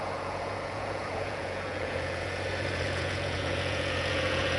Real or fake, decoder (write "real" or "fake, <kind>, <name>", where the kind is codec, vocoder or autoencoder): fake, vocoder, Vocos